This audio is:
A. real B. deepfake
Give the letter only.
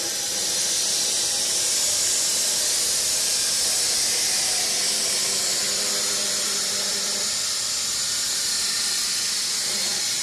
A